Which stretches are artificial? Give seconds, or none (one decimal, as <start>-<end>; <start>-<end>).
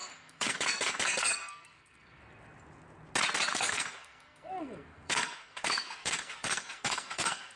0.0-2.2; 3.5-7.6